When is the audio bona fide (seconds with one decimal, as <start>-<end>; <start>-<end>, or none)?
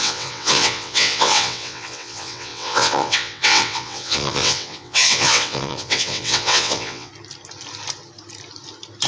7.1-9.1